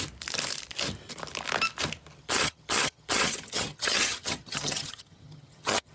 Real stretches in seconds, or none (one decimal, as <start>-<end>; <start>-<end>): 0.0-2.2